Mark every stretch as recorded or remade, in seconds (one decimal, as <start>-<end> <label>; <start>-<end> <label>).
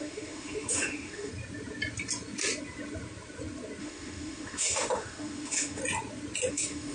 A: 0.0-1.3 remade; 1.3-3.8 recorded; 3.8-5.8 remade; 5.8-6.5 recorded; 6.5-6.9 remade